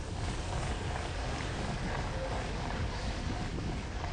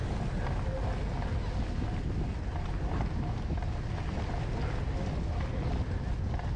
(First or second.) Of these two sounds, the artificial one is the first